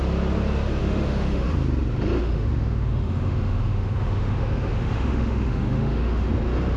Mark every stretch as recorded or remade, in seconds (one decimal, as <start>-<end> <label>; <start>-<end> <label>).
0.0-0.8 recorded; 0.8-1.5 remade; 1.5-2.2 recorded; 2.2-6.3 remade; 6.3-6.8 recorded